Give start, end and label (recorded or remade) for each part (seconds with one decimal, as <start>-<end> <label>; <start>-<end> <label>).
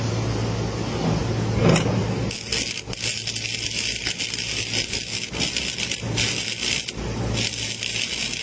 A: 0.0-8.4 recorded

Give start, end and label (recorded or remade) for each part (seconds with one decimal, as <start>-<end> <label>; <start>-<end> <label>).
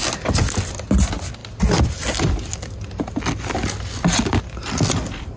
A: 0.0-5.4 recorded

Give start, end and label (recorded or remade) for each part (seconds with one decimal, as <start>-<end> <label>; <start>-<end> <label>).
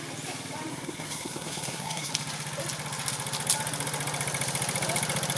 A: 0.0-0.7 recorded; 0.7-2.1 remade; 2.1-5.4 recorded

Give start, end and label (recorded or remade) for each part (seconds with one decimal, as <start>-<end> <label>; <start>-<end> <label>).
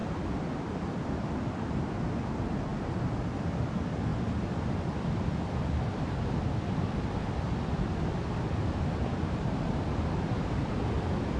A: 0.0-0.8 remade; 0.8-4.1 recorded; 4.1-6.0 remade; 6.0-11.4 recorded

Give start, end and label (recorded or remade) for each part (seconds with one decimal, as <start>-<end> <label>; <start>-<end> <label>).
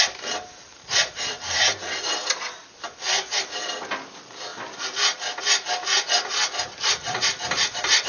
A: 0.0-0.7 recorded; 0.7-1.6 remade; 1.6-7.0 recorded; 7.0-8.1 remade